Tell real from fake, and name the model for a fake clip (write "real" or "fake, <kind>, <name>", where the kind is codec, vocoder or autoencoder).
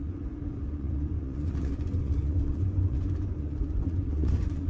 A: fake, vocoder, Vocos